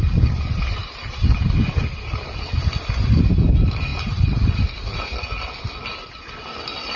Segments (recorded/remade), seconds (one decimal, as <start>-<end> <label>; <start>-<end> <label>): 0.0-7.0 recorded